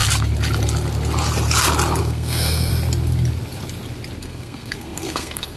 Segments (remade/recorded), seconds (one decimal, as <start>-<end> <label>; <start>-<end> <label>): 0.0-2.0 recorded; 2.0-2.7 remade; 2.7-4.2 recorded; 4.2-5.6 remade